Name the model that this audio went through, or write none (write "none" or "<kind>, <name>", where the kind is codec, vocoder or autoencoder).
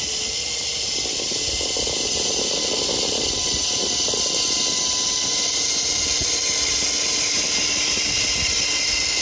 none